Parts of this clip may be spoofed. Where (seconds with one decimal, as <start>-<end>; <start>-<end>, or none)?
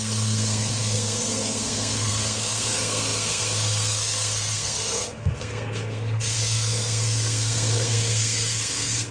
0.0-9.1